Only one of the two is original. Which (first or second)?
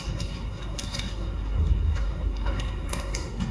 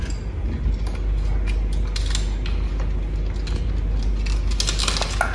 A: second